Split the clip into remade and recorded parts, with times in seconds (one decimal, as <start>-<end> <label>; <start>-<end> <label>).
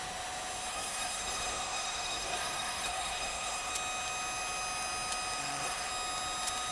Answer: 0.0-0.7 recorded; 0.7-3.7 remade; 3.7-5.4 recorded; 5.4-5.9 remade; 5.9-6.7 recorded